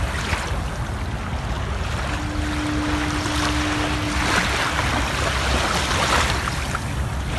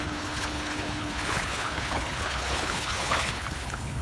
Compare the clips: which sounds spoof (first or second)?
second